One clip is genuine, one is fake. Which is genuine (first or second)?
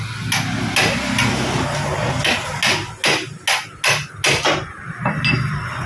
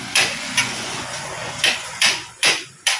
first